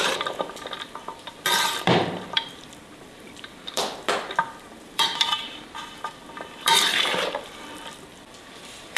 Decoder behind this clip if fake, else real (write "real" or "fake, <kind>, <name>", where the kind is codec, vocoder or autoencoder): fake, vocoder, BigVGAN v2